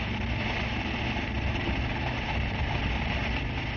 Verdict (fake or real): real